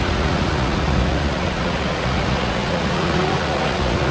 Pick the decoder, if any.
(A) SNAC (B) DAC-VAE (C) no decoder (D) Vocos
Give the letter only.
D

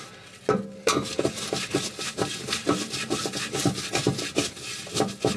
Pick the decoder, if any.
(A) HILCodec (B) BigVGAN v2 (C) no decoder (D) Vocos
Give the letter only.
C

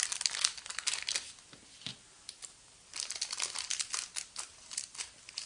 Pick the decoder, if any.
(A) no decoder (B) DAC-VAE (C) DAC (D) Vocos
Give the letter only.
A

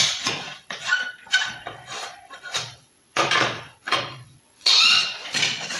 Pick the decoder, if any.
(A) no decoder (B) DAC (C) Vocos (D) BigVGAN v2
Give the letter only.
C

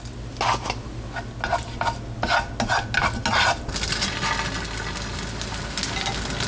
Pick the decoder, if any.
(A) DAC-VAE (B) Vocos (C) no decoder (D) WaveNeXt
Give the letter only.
C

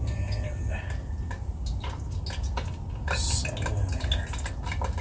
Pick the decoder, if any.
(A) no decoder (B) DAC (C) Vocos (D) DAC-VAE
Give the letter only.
A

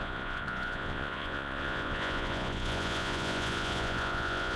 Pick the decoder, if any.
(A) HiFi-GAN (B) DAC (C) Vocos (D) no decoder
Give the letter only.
C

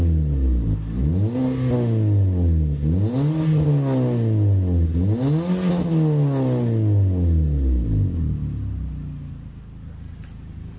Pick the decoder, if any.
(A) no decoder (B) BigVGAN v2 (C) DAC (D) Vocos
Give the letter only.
A